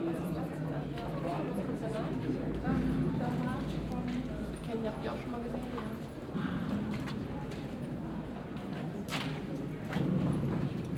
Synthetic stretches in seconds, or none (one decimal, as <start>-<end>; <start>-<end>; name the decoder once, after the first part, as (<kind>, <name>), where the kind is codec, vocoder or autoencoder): 0.0-3.5 (vocoder, BigVGAN v2); 4.5-9.1; 9.9-11.0